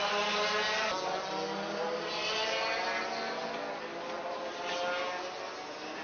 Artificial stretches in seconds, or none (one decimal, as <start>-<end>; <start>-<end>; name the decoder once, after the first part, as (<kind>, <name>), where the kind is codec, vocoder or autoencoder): none